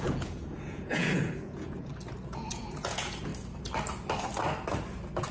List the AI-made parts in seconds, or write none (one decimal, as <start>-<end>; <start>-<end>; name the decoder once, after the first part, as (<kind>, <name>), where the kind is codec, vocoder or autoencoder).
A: 0.0-1.9 (vocoder, Vocos); 2.5-3.3